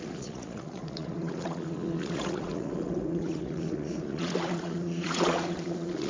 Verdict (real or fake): fake